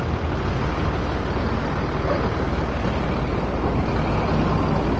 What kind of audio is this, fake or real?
real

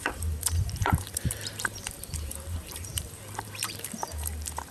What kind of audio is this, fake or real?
fake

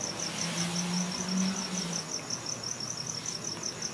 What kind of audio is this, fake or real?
real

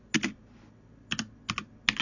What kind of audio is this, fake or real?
real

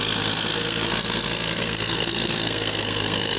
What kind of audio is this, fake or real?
fake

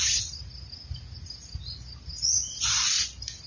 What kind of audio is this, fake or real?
real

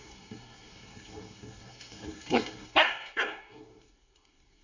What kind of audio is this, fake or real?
fake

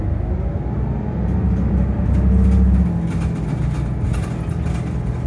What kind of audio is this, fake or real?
real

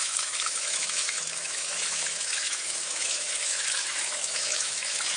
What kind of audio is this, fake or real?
fake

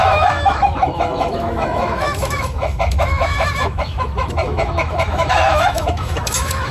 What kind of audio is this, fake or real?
fake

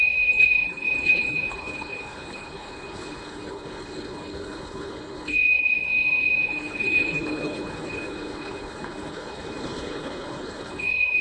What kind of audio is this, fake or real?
fake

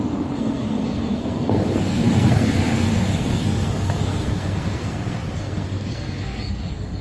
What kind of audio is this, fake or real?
fake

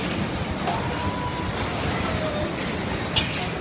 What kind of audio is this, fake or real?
real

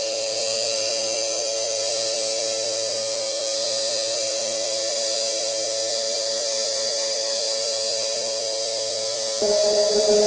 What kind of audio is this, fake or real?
fake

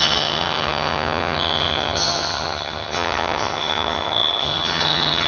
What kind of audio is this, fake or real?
fake